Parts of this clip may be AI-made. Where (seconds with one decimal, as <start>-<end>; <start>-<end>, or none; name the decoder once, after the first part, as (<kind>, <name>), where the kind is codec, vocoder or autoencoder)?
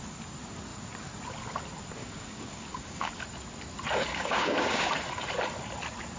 2.0-3.1 (codec, DAC); 4.1-4.9